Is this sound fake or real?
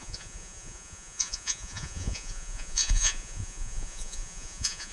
fake